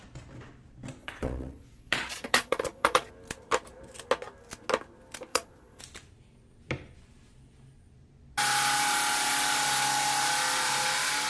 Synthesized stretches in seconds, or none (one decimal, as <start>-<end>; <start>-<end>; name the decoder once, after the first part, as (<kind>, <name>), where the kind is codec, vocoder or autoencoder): 1.0-3.1 (vocoder, Vocos); 5.3-5.8